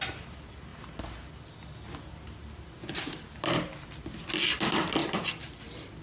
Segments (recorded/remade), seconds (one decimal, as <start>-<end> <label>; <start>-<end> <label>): 0.0-6.0 recorded